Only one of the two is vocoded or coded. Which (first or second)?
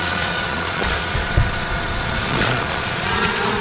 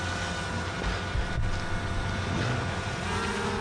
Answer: first